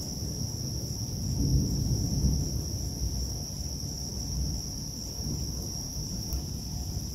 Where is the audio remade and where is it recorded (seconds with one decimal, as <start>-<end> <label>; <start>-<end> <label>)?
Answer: 0.0-7.1 recorded